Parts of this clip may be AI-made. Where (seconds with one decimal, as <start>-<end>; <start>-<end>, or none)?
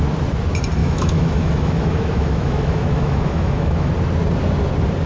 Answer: 0.8-3.9